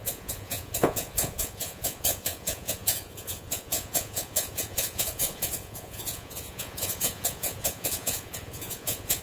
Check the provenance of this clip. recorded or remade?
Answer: remade